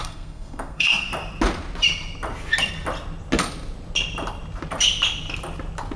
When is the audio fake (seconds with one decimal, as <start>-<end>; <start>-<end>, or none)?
0.0-1.1